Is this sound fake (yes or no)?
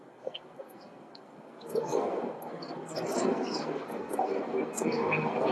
yes